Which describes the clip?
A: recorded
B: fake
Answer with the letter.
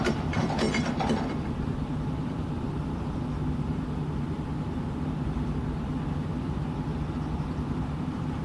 B